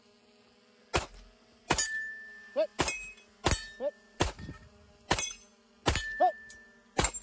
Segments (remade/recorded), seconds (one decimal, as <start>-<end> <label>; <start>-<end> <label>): 0.0-7.2 recorded